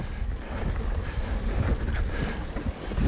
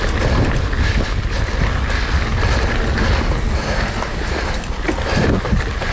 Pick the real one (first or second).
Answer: second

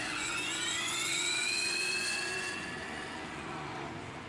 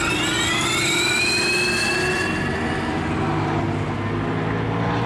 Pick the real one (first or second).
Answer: second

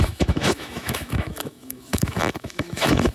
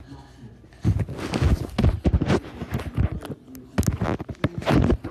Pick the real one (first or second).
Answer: second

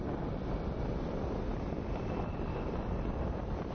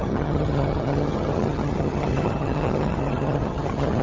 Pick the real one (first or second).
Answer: first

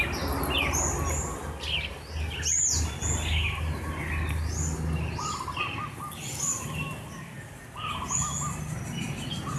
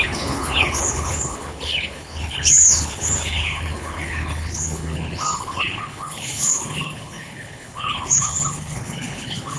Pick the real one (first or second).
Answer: first